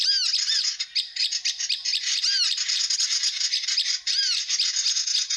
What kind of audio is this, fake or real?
real